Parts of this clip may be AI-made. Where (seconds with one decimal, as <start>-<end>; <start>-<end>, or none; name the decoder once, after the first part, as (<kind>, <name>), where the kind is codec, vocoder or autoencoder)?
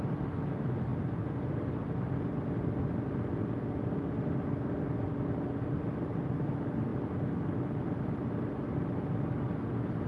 6.9-9.5 (vocoder, BigVGAN v2)